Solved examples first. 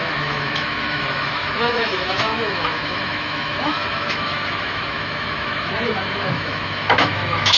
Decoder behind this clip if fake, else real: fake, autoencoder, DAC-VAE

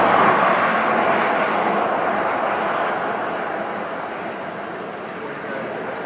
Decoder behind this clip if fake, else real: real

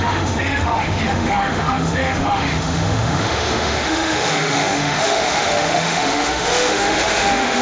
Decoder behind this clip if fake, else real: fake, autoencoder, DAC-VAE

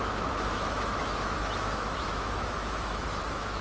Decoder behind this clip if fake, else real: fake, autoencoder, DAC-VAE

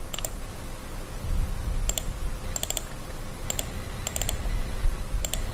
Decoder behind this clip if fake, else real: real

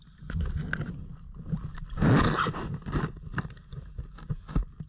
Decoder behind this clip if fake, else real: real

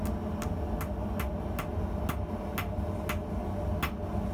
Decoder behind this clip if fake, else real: real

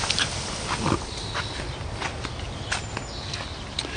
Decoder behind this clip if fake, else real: real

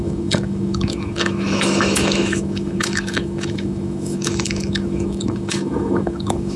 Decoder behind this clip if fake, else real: fake, autoencoder, DAC-VAE